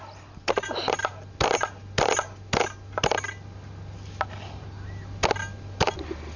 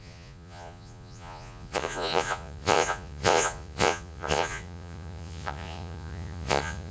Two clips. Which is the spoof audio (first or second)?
second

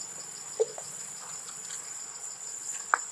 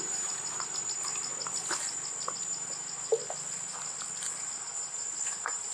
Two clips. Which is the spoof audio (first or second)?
first